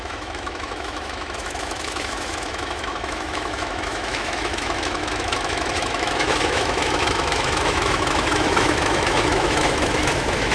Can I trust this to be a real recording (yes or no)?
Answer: no